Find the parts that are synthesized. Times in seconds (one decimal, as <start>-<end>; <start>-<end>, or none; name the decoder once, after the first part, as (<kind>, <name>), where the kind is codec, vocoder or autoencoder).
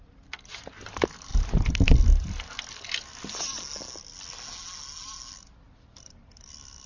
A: none